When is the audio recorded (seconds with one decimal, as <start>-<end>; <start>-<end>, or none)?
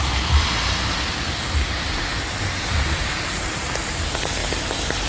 0.0-5.1